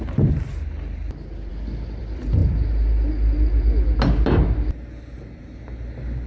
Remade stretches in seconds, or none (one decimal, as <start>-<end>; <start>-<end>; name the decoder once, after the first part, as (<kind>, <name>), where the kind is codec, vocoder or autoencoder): none